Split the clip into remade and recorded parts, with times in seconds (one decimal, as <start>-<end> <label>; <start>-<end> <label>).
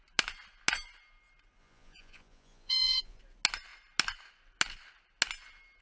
0.0-1.6 recorded; 1.6-3.2 remade; 3.2-5.8 recorded